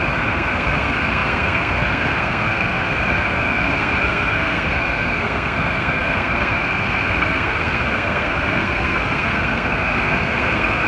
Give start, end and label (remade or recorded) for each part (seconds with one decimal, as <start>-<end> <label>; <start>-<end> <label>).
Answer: 0.0-10.9 remade